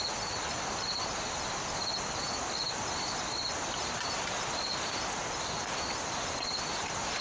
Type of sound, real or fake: real